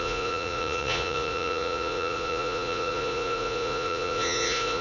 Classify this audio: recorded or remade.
remade